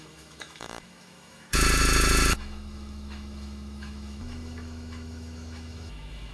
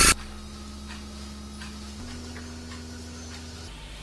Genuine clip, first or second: second